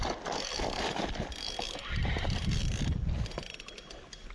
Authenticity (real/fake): real